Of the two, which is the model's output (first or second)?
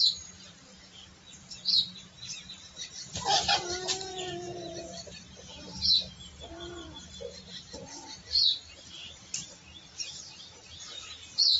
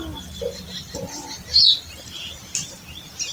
first